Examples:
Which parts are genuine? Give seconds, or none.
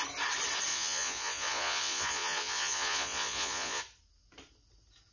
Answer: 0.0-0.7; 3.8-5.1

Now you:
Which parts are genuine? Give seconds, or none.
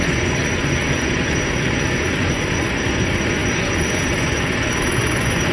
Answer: none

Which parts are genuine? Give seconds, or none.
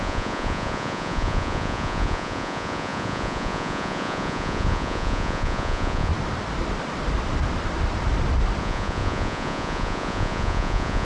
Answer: 6.1-8.6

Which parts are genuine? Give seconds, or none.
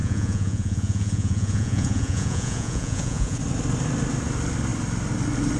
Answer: 3.4-5.6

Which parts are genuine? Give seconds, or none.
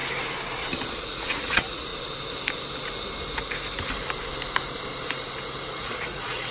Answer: 0.0-1.0; 1.9-5.8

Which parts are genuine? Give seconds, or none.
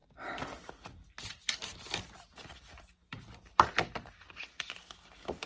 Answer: 0.0-5.5